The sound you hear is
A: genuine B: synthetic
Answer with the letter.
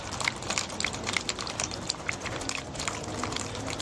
A